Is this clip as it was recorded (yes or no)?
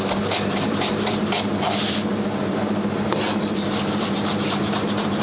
no